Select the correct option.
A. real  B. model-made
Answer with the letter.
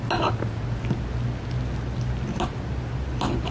A